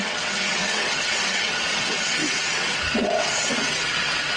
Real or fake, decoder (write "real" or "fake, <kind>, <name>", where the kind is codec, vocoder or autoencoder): fake, vocoder, WaveNeXt